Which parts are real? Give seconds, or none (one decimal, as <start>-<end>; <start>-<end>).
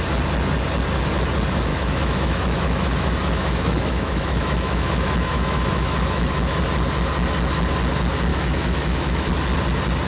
0.0-1.7; 6.6-8.3; 9.3-10.1